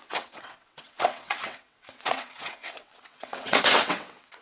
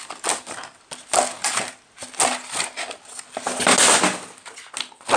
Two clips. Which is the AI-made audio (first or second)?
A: first